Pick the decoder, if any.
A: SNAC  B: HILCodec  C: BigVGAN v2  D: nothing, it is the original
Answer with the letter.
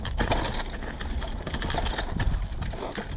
D